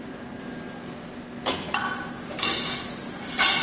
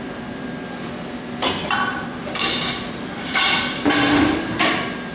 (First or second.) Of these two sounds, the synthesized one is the second